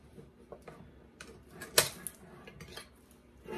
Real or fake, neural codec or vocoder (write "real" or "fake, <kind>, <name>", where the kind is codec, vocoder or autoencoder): real